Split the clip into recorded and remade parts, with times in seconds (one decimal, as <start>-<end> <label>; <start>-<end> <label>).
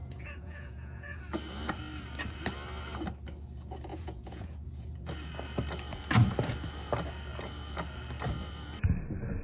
0.0-1.2 remade; 1.2-3.9 recorded; 3.9-5.1 remade; 5.1-9.4 recorded